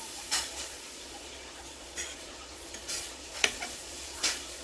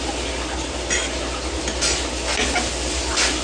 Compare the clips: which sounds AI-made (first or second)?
first